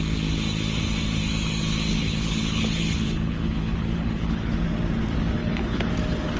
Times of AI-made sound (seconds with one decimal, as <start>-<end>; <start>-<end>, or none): 1.9-4.6; 5.4-5.9